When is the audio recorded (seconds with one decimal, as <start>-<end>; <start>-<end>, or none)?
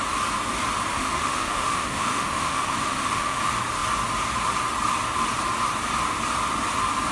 0.0-0.9; 3.4-7.1